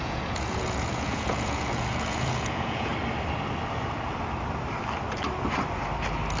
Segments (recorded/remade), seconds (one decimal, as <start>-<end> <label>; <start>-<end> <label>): 0.0-2.9 remade; 2.9-6.4 recorded